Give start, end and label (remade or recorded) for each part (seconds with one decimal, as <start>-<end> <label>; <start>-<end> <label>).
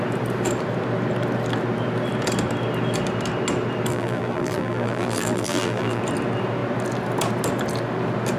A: 0.0-3.9 recorded; 3.9-6.0 remade; 6.0-8.4 recorded